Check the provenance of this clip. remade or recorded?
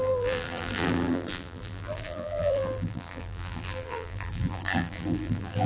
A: remade